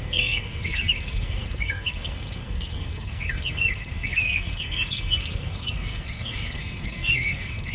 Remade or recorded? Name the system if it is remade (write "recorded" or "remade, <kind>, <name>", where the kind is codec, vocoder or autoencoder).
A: remade, codec, SNAC